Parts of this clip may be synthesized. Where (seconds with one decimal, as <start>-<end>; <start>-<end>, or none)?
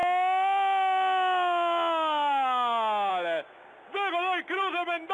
none